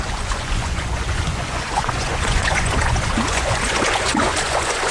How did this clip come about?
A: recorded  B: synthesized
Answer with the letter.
B